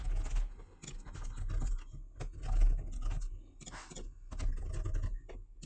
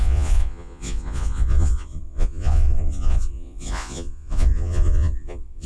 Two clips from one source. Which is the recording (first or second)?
first